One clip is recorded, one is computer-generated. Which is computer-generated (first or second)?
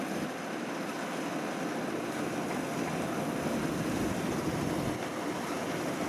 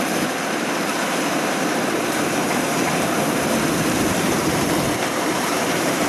second